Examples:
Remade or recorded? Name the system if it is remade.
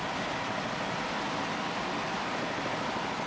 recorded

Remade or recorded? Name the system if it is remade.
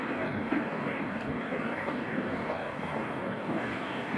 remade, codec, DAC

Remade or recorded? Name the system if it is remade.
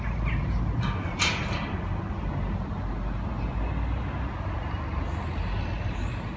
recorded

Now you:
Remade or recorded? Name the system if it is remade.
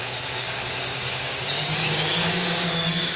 remade, codec, DAC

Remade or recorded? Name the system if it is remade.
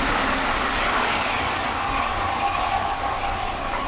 remade, codec, DAC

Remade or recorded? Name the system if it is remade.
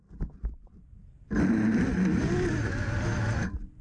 recorded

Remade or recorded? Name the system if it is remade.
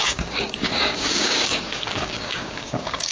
remade, codec, DAC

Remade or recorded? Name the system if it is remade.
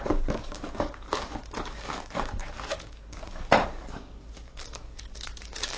remade, codec, DAC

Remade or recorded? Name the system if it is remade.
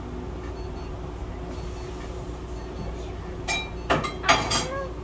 recorded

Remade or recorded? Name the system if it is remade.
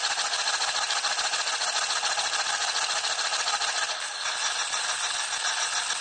recorded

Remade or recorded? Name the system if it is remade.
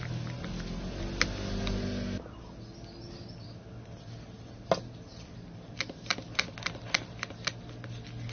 recorded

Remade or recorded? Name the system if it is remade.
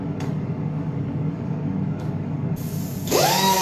remade, codec, DAC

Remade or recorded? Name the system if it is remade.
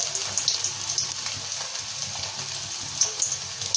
recorded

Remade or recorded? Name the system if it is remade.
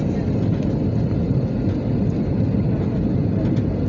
recorded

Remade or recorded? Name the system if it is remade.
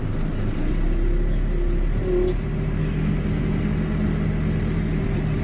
recorded